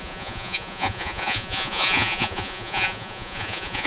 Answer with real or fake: fake